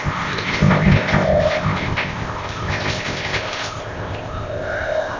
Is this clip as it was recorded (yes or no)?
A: no